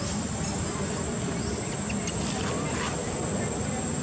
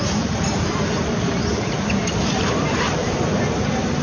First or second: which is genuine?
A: first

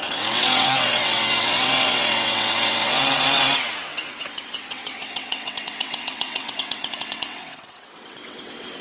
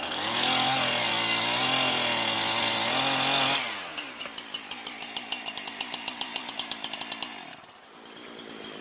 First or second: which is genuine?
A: second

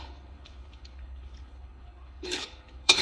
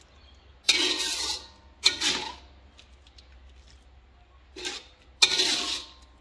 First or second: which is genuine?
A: second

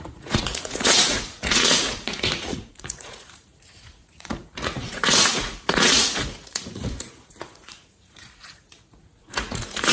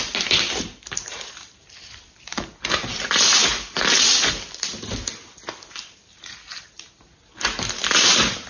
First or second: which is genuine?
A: second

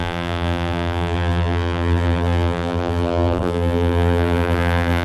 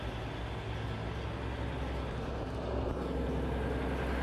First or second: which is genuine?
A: second